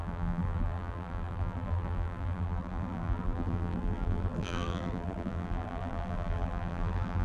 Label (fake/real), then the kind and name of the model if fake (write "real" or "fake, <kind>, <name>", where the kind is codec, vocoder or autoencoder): fake, vocoder, BigVGAN v2